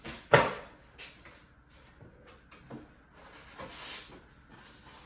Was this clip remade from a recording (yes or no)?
no